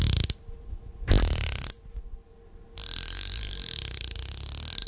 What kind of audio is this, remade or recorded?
recorded